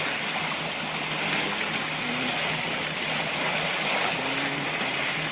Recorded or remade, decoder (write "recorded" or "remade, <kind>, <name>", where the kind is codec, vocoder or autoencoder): recorded